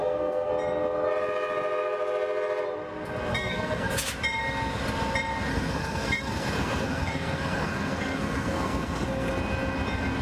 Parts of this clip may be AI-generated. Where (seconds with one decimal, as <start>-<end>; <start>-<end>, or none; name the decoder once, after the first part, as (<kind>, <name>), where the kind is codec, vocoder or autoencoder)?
0.0-0.5 (codec, SNAC); 3.3-3.9; 5.5-9.3